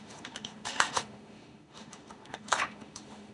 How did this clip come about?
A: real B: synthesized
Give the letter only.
B